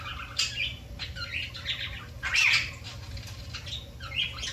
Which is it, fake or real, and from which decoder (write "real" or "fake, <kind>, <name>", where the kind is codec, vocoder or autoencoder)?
real